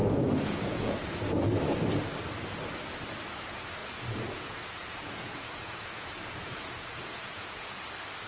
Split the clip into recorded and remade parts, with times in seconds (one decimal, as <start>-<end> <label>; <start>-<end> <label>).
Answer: 0.0-0.9 remade; 0.9-3.8 recorded; 3.8-7.8 remade; 7.8-8.3 recorded